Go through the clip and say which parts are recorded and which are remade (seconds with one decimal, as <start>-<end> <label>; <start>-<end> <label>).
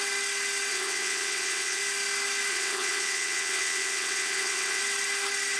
0.0-0.7 recorded; 0.7-1.8 remade; 1.8-2.5 recorded; 2.5-4.8 remade; 4.8-5.6 recorded